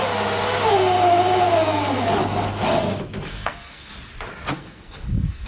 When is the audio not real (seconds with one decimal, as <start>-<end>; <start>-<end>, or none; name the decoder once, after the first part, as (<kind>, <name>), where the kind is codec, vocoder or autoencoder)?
3.3-3.9 (codec, SNAC); 4.5-5.5